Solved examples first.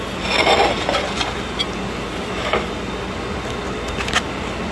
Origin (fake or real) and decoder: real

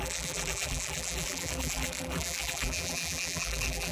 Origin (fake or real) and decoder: fake, vocoder, BigVGAN v2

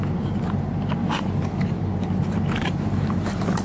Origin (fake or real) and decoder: real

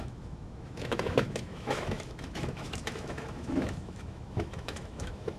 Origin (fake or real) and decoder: fake, autoencoder, DAC-VAE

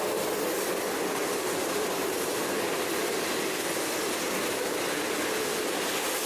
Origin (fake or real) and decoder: real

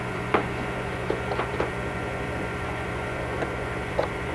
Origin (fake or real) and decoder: fake, vocoder, Vocos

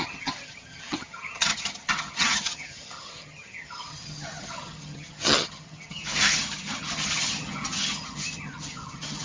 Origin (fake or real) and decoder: fake, vocoder, HiFi-GAN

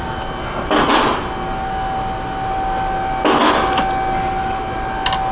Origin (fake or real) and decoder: real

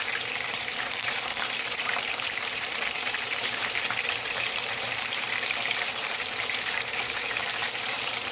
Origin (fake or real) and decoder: fake, vocoder, BigVGAN v2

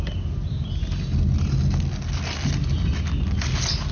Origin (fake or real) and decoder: real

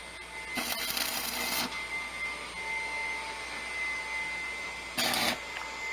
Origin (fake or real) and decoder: real